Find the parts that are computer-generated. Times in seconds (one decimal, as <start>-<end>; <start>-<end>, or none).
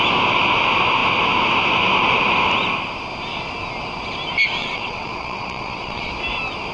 4.6-6.1